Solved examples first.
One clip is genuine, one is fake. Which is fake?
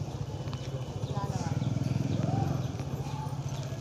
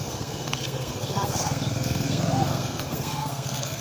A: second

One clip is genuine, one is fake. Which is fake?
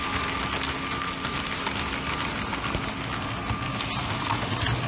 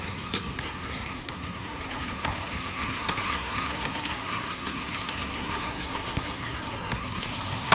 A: second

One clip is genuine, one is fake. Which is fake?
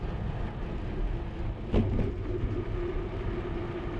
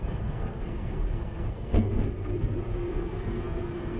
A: second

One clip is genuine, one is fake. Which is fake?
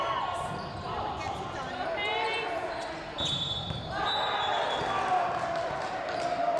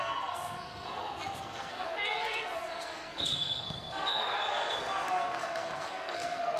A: second